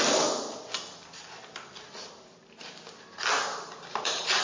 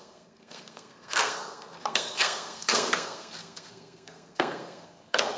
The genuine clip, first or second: first